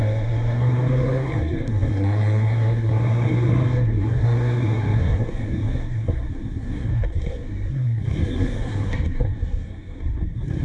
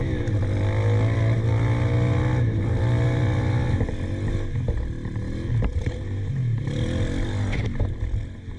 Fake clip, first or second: first